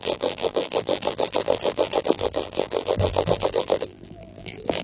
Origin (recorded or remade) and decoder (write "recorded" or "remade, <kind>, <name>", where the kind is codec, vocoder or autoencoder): remade, vocoder, BigVGAN v2